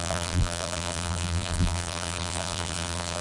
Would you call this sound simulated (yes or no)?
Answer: yes